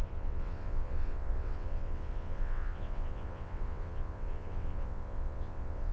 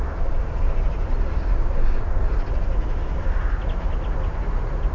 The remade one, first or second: first